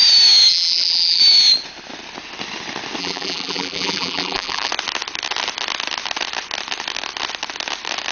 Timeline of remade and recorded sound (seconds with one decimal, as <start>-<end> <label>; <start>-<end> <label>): 0.0-0.5 recorded; 0.5-1.2 remade; 1.2-3.0 recorded; 3.0-4.7 remade; 4.7-8.1 recorded